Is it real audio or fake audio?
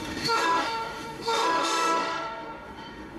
fake